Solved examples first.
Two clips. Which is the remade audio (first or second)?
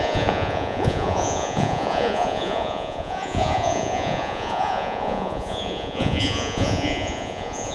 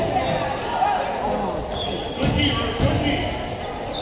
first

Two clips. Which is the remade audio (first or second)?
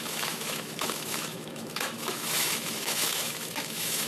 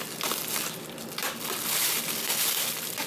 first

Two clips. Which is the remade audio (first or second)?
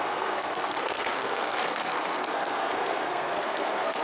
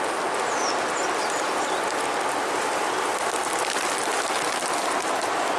first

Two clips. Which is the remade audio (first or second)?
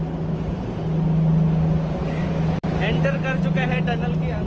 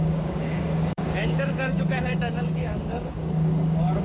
second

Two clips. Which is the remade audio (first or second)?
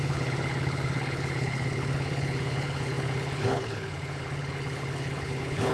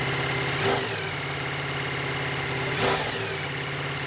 first